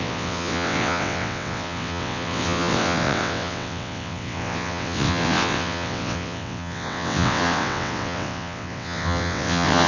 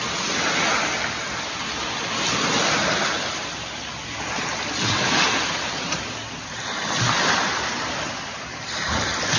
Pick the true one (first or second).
second